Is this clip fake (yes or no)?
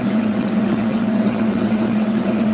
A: yes